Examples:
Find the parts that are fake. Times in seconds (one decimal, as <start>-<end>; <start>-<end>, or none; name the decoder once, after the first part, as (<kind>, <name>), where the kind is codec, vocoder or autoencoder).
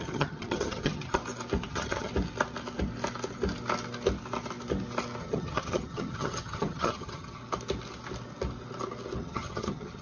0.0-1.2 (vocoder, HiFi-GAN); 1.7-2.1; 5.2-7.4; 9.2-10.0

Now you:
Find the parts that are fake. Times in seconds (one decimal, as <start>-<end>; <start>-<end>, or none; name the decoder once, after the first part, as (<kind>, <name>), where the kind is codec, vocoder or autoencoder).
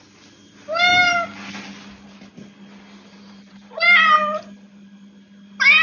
none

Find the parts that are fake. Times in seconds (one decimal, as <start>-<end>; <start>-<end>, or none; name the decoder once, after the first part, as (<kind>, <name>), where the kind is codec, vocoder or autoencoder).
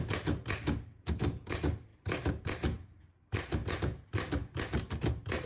none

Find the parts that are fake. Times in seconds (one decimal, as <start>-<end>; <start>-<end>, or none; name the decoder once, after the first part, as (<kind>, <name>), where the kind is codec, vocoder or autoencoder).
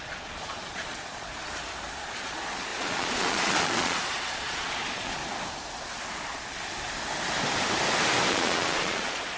0.0-1.3 (vocoder, Vocos); 1.9-5.2; 8.3-9.4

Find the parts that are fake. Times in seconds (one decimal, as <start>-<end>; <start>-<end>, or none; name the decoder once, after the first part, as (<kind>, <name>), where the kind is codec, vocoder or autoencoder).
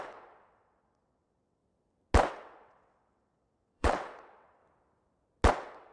0.0-1.6 (vocoder, WaveNeXt); 2.3-4.6; 5.5-5.9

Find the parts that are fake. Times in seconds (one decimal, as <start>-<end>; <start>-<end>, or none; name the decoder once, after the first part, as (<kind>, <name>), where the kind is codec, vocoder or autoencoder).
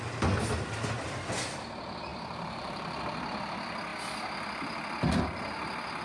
2.1-3.0 (vocoder, BigVGAN v2)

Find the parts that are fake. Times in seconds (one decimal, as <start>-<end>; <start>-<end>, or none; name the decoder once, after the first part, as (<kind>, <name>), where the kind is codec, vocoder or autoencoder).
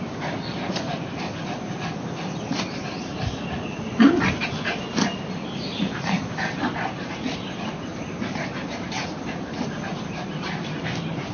7.9-10.8 (vocoder, BigVGAN v2)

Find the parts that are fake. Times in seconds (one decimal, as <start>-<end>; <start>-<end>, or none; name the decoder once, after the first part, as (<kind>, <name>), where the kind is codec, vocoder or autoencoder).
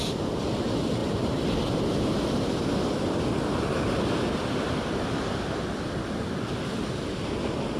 none